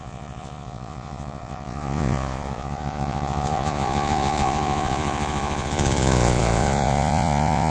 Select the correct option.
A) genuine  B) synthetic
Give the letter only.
B